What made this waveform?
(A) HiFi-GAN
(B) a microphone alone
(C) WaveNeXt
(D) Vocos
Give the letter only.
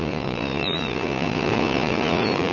D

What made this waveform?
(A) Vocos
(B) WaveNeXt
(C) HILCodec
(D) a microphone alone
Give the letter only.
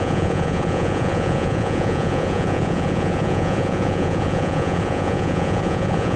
A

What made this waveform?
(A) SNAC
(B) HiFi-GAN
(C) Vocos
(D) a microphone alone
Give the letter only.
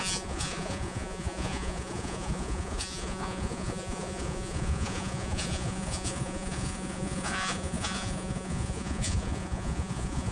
C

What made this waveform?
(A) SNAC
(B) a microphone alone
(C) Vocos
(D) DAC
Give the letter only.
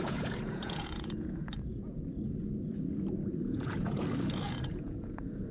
C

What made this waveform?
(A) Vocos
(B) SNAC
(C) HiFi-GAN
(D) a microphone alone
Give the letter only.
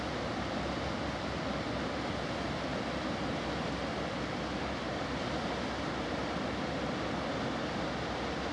D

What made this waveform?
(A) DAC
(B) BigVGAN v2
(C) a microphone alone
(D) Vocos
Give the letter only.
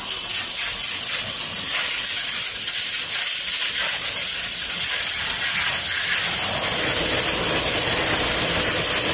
C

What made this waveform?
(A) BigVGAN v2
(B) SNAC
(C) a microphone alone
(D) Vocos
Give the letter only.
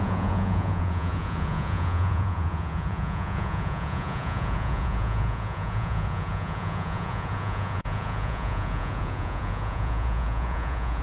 D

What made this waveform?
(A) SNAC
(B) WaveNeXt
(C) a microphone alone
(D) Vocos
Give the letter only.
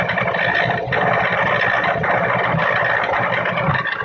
C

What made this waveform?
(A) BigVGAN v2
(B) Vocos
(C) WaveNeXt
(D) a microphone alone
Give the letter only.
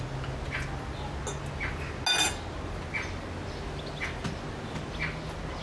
D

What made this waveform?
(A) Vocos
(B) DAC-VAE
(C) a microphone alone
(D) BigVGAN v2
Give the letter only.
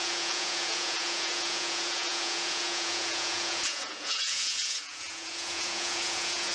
A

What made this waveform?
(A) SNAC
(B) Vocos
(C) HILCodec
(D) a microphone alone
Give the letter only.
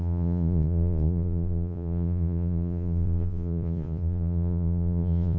B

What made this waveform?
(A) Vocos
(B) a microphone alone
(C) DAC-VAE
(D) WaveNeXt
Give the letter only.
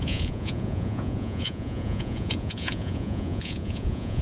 A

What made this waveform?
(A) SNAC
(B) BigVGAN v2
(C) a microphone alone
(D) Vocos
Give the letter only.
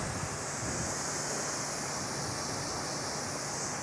C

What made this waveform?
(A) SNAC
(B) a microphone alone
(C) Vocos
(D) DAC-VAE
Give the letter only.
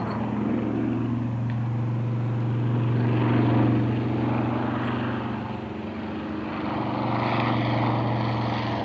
B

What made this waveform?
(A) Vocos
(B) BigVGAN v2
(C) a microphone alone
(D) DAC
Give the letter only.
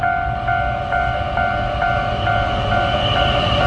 C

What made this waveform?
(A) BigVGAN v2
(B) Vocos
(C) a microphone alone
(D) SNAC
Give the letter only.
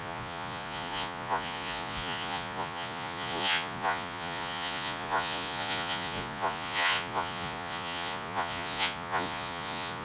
B